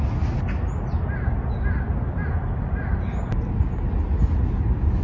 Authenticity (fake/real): real